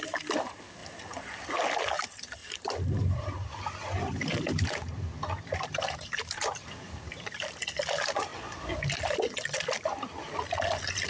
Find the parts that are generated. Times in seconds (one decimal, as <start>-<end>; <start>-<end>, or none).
2.4-7.6